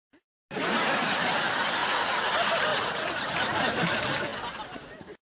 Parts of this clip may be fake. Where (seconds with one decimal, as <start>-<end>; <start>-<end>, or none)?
1.8-2.3; 2.7-3.3